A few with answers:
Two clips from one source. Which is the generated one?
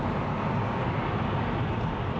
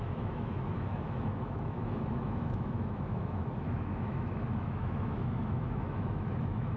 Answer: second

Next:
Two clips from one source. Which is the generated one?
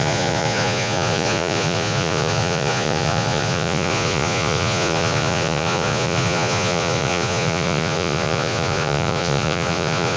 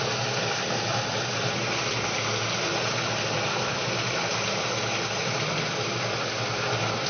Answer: first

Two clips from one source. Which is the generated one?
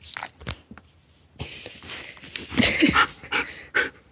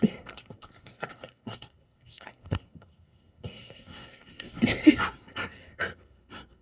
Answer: second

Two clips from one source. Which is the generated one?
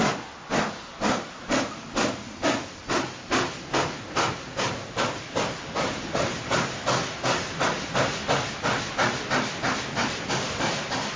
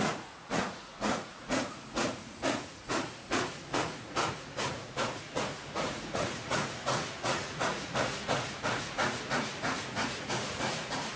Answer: second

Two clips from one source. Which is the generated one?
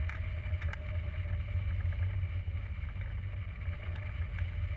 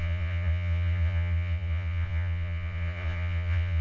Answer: second